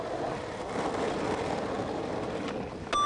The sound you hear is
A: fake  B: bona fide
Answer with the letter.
B